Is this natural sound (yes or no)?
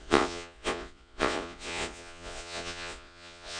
no